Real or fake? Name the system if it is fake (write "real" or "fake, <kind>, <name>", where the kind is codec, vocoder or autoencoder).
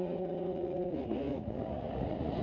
fake, vocoder, Vocos